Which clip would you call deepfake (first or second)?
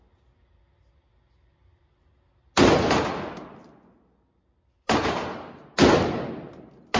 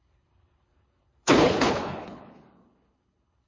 second